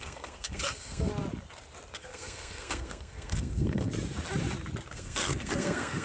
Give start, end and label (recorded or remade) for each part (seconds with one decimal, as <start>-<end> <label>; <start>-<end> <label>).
0.0-1.1 remade; 1.1-2.0 recorded; 2.0-3.9 remade; 3.9-4.9 recorded; 4.9-6.0 remade